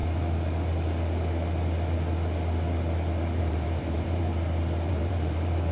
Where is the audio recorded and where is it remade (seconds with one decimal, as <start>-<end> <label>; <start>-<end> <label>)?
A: 0.0-3.4 recorded; 3.4-4.3 remade; 4.3-4.9 recorded; 4.9-5.7 remade